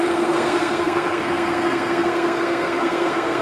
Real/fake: fake